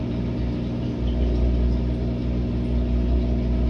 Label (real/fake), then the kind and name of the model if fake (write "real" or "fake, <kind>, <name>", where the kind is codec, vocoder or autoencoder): real